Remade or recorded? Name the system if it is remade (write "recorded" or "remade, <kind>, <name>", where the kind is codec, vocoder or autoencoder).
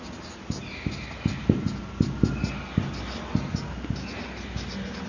recorded